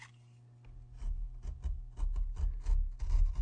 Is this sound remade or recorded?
recorded